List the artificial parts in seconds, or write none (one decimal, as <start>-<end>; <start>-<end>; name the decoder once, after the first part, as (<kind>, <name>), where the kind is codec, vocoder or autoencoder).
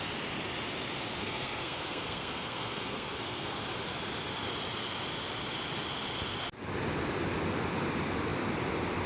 1.2-3.5 (codec, SNAC)